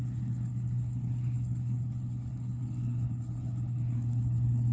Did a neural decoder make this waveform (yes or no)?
yes